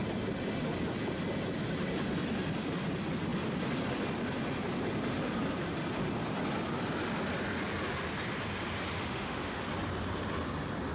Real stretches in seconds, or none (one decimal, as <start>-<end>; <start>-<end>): 0.0-8.9; 9.6-10.9